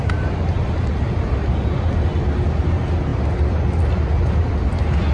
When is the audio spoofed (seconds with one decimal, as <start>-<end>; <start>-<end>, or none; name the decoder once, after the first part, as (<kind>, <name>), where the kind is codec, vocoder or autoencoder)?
none